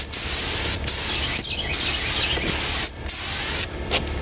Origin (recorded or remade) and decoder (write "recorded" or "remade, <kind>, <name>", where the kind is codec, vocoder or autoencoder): recorded